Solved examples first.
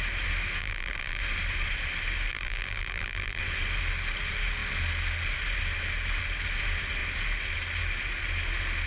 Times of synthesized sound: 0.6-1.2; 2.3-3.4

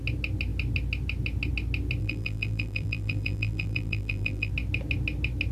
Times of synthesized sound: 2.0-4.5

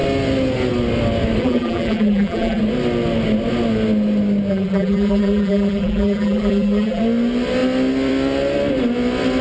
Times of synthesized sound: 1.4-2.6; 4.5-7.0